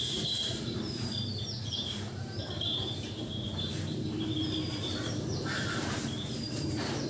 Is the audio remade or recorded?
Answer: remade